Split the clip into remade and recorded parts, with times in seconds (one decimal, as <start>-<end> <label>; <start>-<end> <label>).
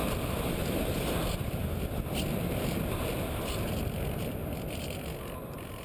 0.0-5.8 recorded